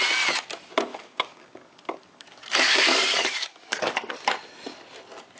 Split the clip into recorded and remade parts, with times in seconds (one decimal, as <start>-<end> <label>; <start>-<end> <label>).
0.0-0.9 recorded; 0.9-4.1 remade; 4.1-5.4 recorded